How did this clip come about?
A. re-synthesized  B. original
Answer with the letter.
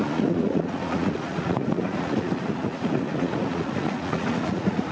A